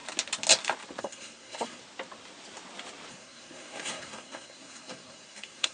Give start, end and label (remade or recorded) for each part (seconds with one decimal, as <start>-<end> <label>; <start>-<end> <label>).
0.0-1.0 recorded; 1.0-1.8 remade; 1.8-3.1 recorded; 3.1-5.7 remade